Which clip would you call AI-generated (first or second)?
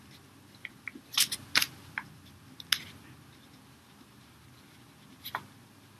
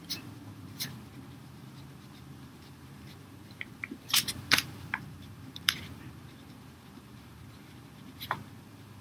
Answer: second